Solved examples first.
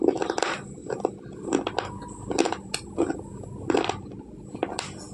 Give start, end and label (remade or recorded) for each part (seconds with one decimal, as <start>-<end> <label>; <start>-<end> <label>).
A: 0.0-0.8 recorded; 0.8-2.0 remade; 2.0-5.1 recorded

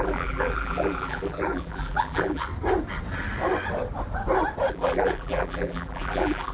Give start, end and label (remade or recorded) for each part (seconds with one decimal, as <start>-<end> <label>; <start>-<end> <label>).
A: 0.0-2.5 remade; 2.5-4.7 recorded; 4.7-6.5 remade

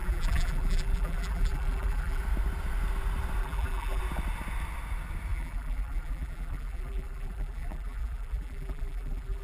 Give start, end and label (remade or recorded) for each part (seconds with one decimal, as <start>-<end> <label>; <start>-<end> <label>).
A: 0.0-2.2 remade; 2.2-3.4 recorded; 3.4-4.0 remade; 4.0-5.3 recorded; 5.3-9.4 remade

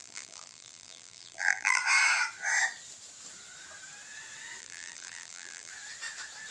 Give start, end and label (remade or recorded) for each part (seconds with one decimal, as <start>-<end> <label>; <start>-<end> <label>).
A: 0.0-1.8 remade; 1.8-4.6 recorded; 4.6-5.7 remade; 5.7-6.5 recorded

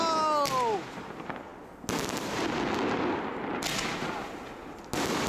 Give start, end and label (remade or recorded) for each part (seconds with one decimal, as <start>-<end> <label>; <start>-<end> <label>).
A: 0.0-5.3 recorded

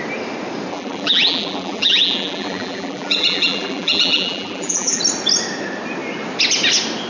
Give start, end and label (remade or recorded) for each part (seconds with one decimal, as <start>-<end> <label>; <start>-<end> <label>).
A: 0.0-0.7 recorded; 0.7-5.0 remade; 5.0-7.1 recorded

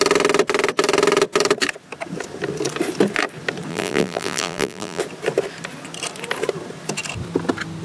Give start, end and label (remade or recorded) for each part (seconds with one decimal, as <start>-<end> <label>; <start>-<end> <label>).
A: 0.0-3.7 recorded; 3.7-5.0 remade; 5.0-7.8 recorded